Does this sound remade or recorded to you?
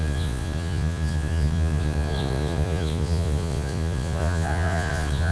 remade